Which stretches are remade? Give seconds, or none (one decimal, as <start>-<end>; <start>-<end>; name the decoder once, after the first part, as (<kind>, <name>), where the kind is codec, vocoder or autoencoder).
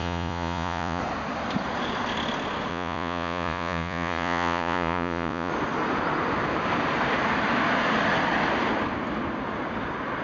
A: 0.0-1.0 (vocoder, Vocos); 2.7-5.5